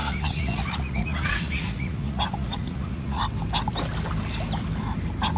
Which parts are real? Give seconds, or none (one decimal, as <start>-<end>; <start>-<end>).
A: 3.2-5.4